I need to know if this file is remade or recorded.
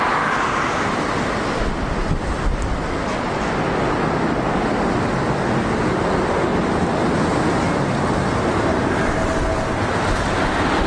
recorded